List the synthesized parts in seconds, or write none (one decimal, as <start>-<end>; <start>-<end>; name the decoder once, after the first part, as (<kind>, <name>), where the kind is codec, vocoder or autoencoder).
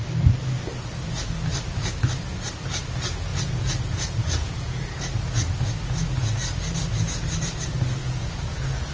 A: 3.3-5.0 (vocoder, Vocos); 8.0-8.9